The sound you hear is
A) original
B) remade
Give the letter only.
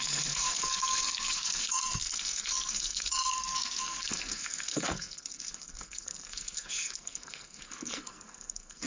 B